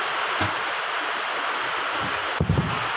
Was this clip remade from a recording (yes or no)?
no